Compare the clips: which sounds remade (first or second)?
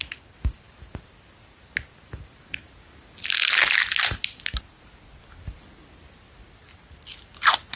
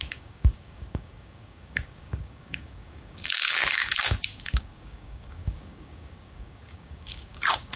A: second